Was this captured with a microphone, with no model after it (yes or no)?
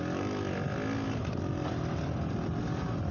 yes